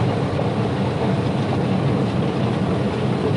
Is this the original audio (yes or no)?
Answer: yes